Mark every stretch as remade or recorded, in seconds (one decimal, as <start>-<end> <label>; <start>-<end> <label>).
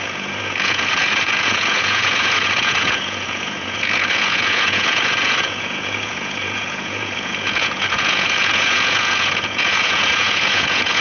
0.0-11.0 remade